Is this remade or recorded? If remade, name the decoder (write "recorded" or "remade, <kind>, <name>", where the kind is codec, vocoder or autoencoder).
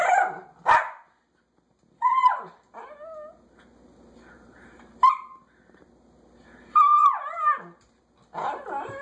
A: recorded